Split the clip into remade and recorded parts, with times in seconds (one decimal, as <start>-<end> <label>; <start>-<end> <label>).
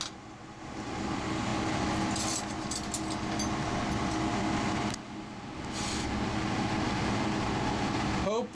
0.0-8.5 recorded